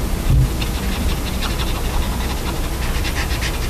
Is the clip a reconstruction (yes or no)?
no